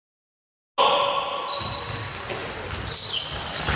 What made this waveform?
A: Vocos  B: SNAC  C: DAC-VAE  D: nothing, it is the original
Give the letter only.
D